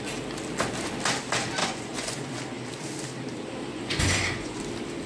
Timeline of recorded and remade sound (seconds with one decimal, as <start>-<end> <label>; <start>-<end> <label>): 0.0-1.6 recorded; 1.6-2.4 remade; 2.4-3.7 recorded; 3.7-4.6 remade; 4.6-5.1 recorded